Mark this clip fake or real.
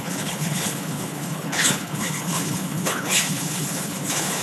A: fake